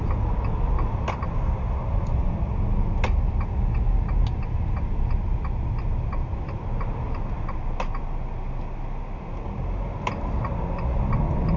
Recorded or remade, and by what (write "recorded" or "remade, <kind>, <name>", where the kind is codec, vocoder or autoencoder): recorded